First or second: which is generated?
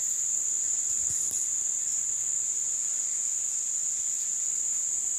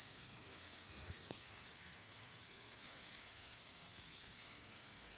second